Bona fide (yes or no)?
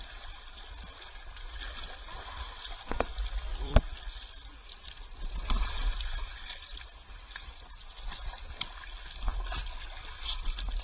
no